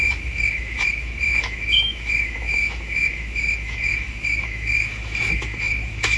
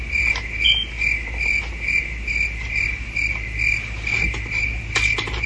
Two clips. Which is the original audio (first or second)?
second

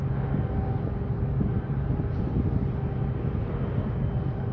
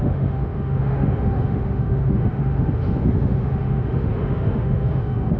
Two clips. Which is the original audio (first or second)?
first